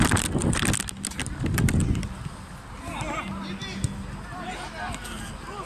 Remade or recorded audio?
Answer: recorded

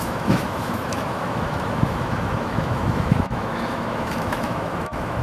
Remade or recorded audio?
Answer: remade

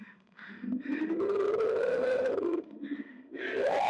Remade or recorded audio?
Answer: remade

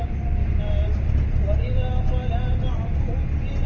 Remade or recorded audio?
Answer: recorded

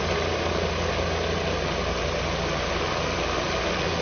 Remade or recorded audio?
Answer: recorded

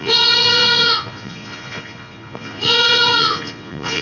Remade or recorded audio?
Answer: remade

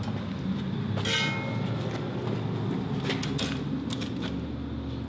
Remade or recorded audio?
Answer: recorded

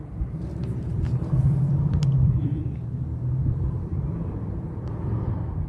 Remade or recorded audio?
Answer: remade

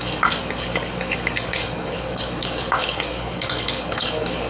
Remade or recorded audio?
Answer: remade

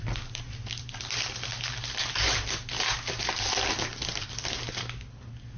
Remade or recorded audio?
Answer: recorded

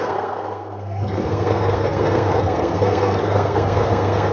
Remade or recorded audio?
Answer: remade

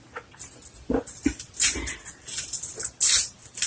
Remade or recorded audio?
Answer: recorded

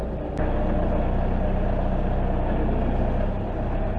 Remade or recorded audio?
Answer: recorded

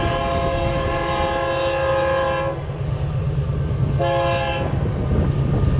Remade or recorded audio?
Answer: recorded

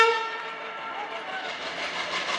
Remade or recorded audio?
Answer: recorded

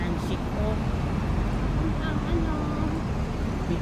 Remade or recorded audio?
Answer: recorded